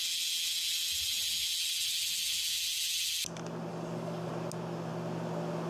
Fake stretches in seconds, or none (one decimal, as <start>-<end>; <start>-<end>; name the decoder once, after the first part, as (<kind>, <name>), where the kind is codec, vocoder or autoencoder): 3.7-4.3 (codec, DAC)

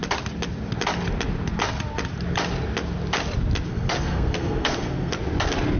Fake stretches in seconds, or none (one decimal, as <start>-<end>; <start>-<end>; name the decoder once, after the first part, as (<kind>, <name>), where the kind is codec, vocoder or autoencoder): 3.7-5.1 (codec, SNAC)